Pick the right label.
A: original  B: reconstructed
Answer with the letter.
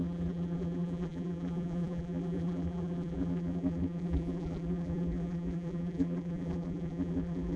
B